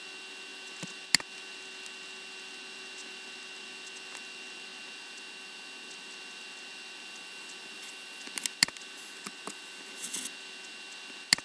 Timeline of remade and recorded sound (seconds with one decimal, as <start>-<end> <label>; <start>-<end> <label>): 0.0-11.4 recorded